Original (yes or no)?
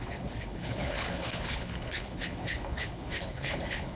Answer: no